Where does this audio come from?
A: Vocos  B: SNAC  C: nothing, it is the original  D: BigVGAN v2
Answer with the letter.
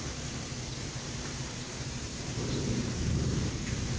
D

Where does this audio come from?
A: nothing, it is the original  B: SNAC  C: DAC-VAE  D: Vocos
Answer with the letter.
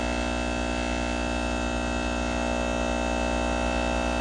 A